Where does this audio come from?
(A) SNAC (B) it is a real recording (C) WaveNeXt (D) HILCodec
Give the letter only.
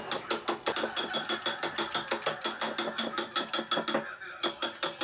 B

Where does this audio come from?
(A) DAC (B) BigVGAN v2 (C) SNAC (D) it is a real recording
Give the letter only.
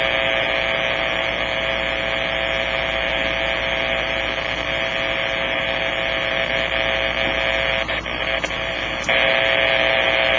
D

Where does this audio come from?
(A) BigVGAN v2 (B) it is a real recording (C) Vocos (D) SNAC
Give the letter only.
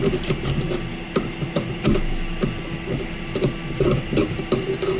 B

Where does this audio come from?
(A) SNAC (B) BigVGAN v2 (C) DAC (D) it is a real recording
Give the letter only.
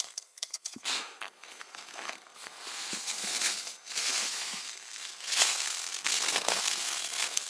A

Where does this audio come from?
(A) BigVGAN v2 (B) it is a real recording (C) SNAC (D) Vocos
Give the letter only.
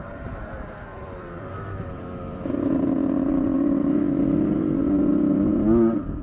A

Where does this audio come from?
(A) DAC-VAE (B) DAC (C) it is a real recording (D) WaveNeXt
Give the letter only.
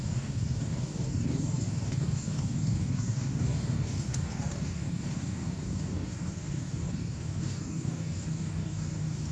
B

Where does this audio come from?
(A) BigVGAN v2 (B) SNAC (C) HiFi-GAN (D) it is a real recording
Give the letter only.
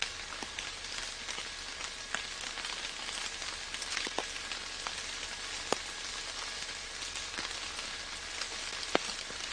D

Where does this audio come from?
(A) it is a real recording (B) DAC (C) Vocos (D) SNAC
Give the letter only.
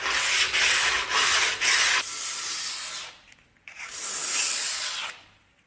A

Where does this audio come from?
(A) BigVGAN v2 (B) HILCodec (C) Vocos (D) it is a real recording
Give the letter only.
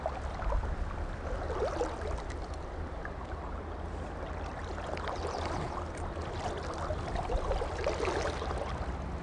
D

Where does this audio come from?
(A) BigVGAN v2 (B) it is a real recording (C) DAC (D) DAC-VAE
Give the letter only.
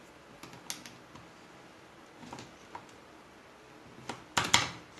B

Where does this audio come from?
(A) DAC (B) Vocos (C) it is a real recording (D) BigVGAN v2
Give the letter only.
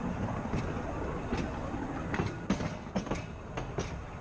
C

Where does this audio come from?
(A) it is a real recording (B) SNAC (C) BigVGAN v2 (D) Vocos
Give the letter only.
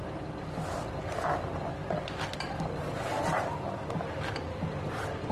A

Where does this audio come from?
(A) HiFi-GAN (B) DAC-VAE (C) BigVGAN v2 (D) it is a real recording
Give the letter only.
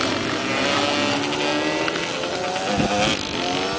D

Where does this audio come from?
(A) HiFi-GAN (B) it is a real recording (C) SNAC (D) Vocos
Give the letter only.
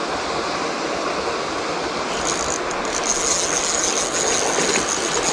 B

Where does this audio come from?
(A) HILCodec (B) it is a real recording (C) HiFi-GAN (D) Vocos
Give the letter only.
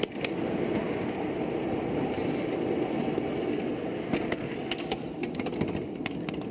B